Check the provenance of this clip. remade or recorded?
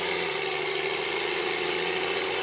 recorded